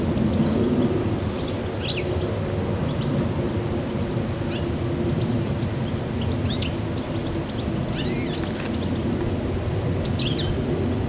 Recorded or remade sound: recorded